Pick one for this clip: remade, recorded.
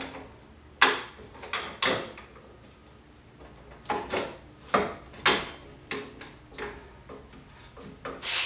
recorded